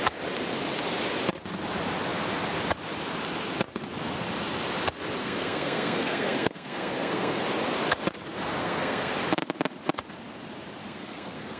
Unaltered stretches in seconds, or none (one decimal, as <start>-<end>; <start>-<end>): 0.0-5.2; 7.4-8.6; 9.1-10.8